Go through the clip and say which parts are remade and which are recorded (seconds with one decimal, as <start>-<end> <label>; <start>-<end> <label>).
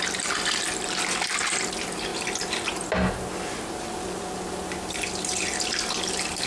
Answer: 0.0-6.5 recorded